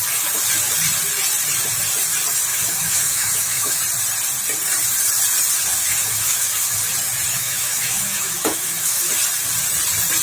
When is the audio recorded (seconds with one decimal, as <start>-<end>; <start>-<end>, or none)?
0.0-2.5; 3.8-5.8; 6.8-7.3; 9.1-10.2